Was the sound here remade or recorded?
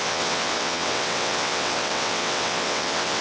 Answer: remade